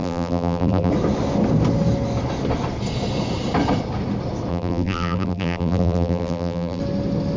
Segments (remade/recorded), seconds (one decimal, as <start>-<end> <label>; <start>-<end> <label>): 0.0-0.9 remade; 0.9-4.5 recorded; 4.5-6.8 remade; 6.8-7.4 recorded